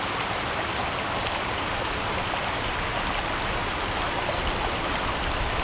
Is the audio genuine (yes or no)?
yes